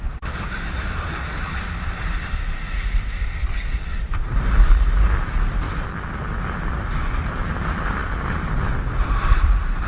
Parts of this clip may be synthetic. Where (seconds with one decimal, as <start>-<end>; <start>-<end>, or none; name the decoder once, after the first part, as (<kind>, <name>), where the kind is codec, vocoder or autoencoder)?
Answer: none